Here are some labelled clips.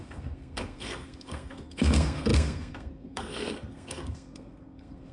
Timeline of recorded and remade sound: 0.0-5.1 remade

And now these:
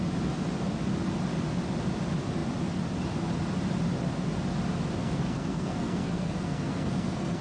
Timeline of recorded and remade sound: 0.0-5.0 recorded; 5.0-7.4 remade

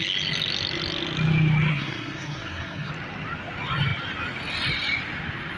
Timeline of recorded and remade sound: 0.0-1.7 recorded; 1.7-2.9 remade; 2.9-5.6 recorded

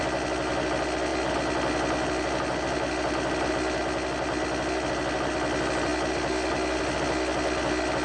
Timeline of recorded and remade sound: 0.0-8.0 recorded